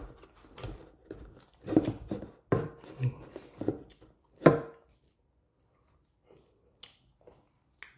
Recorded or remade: recorded